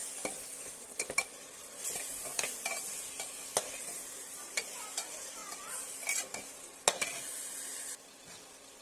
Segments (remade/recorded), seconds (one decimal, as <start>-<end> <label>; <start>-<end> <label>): 0.0-8.8 recorded